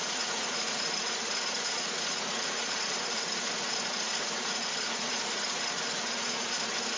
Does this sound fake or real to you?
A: fake